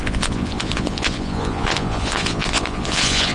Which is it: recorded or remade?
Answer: remade